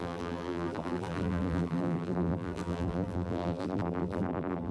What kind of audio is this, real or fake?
fake